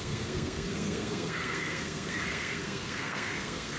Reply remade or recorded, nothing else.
remade